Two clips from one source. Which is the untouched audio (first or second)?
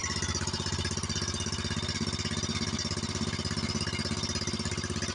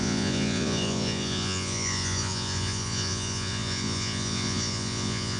first